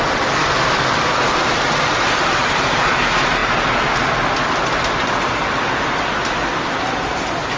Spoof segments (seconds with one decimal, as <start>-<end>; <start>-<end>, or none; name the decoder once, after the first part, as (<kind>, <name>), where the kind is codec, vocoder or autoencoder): none